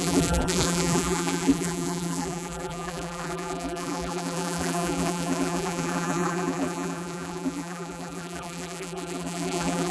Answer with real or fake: fake